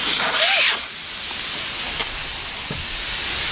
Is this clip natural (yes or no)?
yes